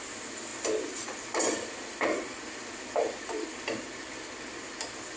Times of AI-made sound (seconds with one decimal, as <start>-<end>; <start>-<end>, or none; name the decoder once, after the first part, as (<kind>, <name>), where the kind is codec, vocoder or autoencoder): none